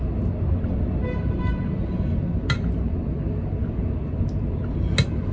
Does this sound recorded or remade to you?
recorded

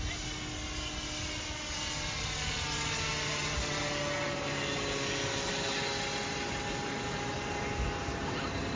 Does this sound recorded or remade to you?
recorded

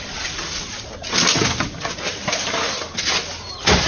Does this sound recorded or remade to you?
recorded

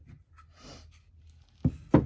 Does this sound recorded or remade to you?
recorded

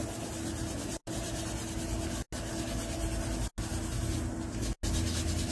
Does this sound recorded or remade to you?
recorded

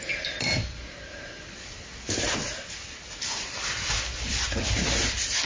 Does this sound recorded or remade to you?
recorded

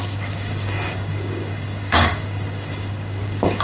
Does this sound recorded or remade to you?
remade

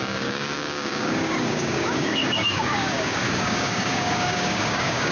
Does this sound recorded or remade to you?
remade